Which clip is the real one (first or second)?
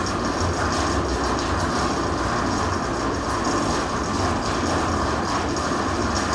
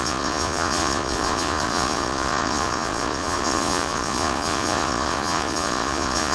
first